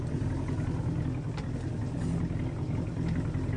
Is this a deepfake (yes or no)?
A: no